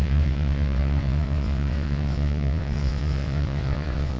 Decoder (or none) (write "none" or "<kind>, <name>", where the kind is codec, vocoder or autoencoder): vocoder, WaveNeXt